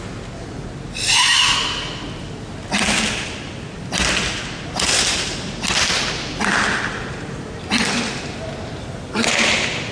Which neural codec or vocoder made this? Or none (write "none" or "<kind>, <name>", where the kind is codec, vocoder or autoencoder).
none